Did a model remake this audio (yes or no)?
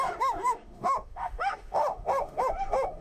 yes